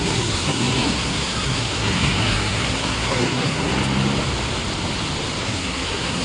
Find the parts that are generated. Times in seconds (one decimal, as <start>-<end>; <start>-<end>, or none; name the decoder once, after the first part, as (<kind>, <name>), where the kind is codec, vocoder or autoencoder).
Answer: 0.0-3.7 (codec, SNAC); 5.4-6.2